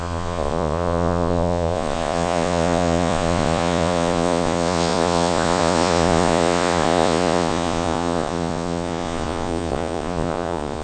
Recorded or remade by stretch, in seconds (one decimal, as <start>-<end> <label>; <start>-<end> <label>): 0.0-10.8 remade